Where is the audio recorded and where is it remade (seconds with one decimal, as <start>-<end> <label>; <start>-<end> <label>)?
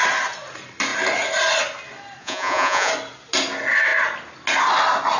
0.0-2.2 recorded; 2.2-2.9 remade; 2.9-5.2 recorded